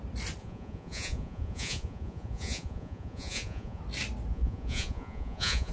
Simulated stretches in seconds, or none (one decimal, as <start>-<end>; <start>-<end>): 0.4-3.8; 4.3-5.7